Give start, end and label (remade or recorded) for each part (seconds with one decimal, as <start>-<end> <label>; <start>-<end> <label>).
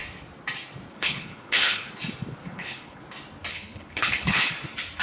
0.0-0.9 recorded; 0.9-1.9 remade; 1.9-2.4 recorded; 2.4-3.0 remade; 3.0-3.5 recorded; 3.5-4.5 remade; 4.5-5.0 recorded